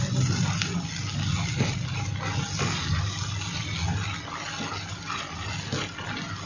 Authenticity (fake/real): real